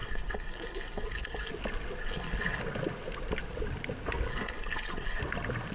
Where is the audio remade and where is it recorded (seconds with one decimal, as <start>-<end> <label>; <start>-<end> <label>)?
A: 0.0-1.5 remade; 1.5-2.0 recorded; 2.0-2.6 remade; 2.6-4.3 recorded; 4.3-5.2 remade; 5.2-5.7 recorded